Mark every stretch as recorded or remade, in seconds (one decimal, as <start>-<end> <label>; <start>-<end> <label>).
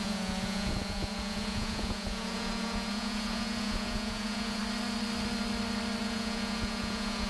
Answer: 0.0-4.6 remade; 4.6-6.0 recorded; 6.0-7.3 remade